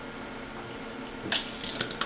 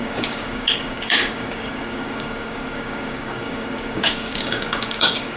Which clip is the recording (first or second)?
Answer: first